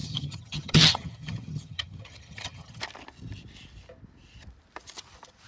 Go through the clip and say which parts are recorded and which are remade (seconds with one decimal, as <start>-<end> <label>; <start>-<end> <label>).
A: 0.0-2.8 remade; 2.8-5.5 recorded